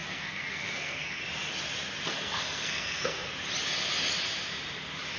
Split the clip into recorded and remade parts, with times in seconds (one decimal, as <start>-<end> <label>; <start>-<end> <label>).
0.0-1.2 remade; 1.2-2.1 recorded; 2.1-3.3 remade; 3.3-5.2 recorded